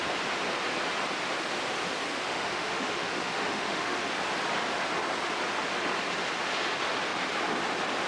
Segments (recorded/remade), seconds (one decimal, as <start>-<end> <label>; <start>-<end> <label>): 0.0-2.1 recorded; 2.1-4.1 remade; 4.1-8.1 recorded